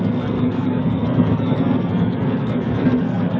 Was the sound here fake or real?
fake